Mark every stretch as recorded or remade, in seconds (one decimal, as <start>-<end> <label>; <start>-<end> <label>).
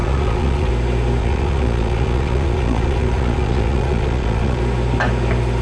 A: 0.0-0.7 remade; 0.7-1.2 recorded; 1.2-4.6 remade; 4.6-5.6 recorded